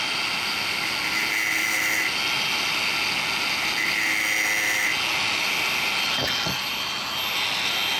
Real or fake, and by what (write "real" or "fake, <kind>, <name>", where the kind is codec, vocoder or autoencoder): real